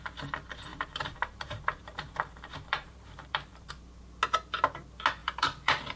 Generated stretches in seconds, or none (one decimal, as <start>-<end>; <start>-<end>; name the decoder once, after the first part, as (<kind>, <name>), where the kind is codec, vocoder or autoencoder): 0.7-3.7 (vocoder, BigVGAN v2); 5.2-6.0